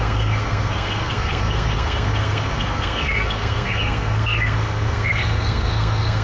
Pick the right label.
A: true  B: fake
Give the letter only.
B